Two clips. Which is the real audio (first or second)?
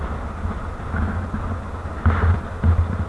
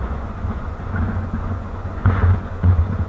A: first